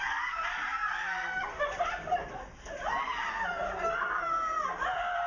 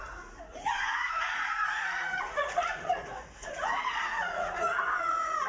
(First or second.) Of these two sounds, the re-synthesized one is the second